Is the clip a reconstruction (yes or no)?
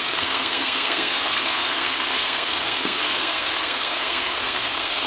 yes